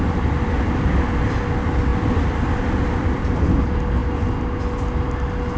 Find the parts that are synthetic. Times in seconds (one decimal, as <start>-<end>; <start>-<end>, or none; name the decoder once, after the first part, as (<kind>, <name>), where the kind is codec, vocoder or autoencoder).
1.9-3.6 (vocoder, BigVGAN v2)